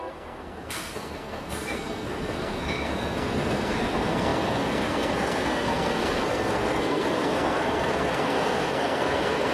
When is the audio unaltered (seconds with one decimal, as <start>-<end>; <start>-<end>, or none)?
none